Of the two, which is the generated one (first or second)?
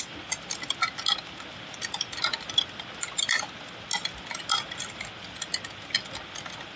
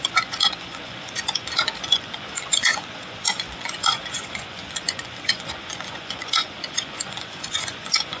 second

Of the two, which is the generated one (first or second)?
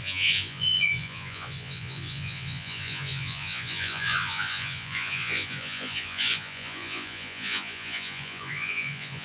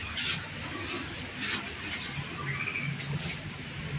first